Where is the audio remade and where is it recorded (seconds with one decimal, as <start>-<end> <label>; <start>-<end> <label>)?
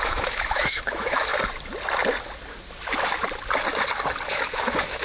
0.0-1.3 remade; 1.3-4.3 recorded; 4.3-5.0 remade